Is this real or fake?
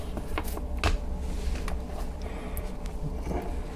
real